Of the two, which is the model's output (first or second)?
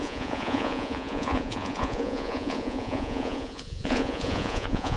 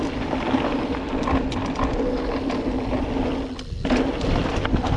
first